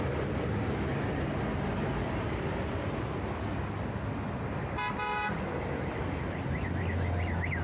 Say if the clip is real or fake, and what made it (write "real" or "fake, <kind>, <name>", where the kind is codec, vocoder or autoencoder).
real